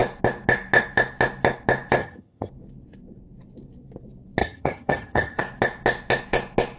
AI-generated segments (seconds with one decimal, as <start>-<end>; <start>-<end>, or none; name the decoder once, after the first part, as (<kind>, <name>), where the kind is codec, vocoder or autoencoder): 2.0-2.5 (vocoder, HiFi-GAN); 4.4-5.4